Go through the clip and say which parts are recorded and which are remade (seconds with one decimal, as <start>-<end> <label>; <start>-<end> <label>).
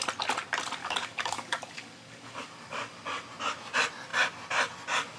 0.0-0.8 recorded; 0.8-3.0 remade; 3.0-5.2 recorded